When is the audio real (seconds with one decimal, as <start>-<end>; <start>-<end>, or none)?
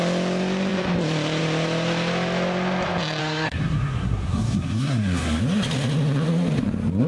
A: 0.0-3.2; 5.4-7.1